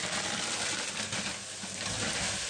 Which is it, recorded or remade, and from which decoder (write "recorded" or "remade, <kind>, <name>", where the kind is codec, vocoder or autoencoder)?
recorded